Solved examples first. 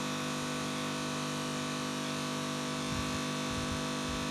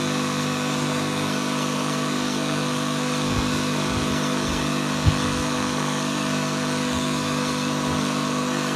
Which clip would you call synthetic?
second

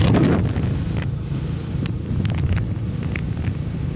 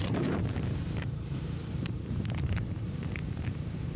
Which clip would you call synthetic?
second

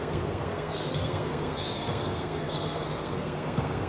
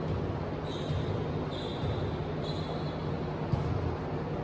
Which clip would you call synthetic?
first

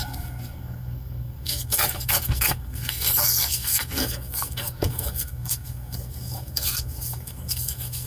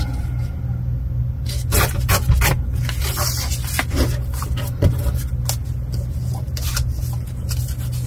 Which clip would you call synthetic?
first